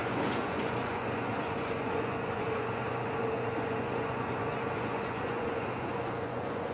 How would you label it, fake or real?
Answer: fake